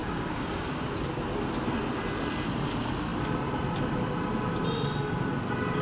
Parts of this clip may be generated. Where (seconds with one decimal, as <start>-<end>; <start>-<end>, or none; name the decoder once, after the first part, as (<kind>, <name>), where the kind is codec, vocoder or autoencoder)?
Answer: 0.0-0.9 (codec, DAC)